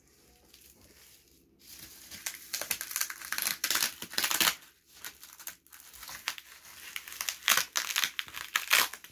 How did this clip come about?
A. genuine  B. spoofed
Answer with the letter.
A